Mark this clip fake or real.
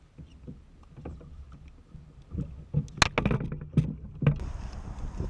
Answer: real